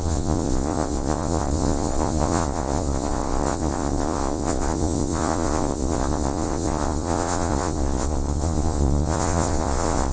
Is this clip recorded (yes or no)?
no